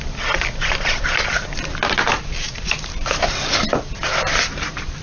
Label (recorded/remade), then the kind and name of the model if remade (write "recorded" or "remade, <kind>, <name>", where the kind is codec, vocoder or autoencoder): recorded